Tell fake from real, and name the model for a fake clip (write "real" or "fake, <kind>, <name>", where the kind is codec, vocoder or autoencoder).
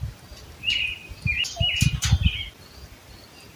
real